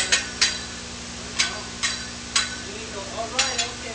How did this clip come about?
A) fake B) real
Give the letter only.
B